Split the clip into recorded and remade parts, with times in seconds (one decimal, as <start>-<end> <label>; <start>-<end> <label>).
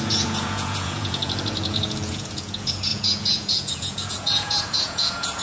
0.0-5.4 remade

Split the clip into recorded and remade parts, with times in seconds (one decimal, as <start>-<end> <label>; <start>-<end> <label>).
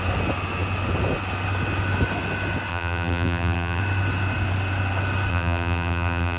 0.0-2.7 recorded; 2.7-3.8 remade; 3.8-5.3 recorded; 5.3-6.4 remade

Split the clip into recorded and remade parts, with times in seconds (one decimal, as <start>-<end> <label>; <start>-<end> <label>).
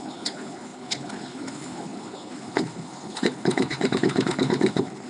0.0-5.1 remade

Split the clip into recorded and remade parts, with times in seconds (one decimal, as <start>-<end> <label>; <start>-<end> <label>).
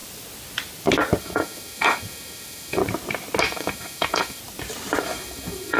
0.0-1.2 recorded; 1.2-2.8 remade; 2.8-3.4 recorded; 3.4-4.4 remade; 4.4-5.0 recorded; 5.0-5.8 remade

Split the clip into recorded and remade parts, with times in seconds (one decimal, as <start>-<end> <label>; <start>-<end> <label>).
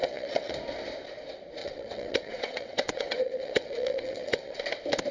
0.0-0.5 remade; 0.5-1.6 recorded; 1.6-4.6 remade; 4.6-5.1 recorded